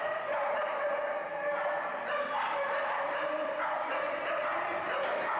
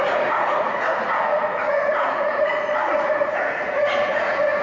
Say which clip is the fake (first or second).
second